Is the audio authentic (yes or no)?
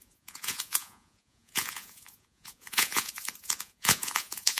no